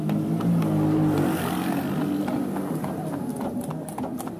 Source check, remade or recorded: recorded